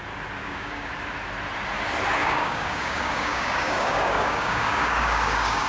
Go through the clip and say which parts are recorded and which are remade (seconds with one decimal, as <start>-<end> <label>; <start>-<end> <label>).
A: 0.0-0.4 recorded; 0.4-0.9 remade; 0.9-2.2 recorded; 2.2-5.7 remade